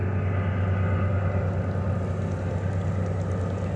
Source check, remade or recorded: recorded